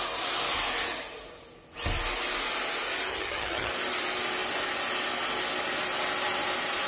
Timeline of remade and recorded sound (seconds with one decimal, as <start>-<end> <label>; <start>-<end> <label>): 0.0-3.1 recorded; 3.1-3.7 remade; 3.7-6.9 recorded